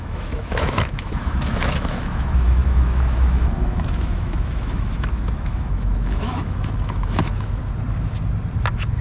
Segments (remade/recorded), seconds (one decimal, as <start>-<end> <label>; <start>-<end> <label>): 0.0-7.6 remade; 7.6-9.0 recorded

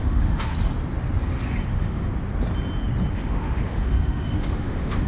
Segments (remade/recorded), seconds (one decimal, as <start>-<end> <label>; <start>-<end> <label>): 0.0-0.5 remade; 0.5-1.7 recorded; 1.7-2.1 remade; 2.1-3.1 recorded; 3.1-5.1 remade